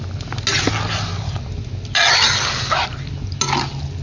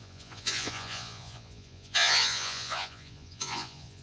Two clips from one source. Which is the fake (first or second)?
second